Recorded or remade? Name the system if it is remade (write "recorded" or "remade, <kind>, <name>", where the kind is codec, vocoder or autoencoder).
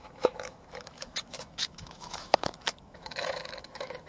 remade, autoencoder, DAC-VAE